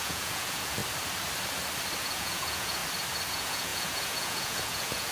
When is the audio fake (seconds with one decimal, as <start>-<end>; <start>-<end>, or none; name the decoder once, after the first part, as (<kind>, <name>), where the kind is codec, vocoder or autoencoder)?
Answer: 0.0-0.8 (vocoder, Vocos); 2.0-2.8; 3.3-5.1